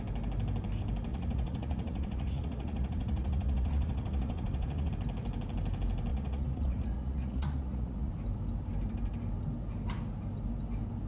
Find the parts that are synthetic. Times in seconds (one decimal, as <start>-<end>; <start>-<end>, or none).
1.1-4.9; 6.1-8.1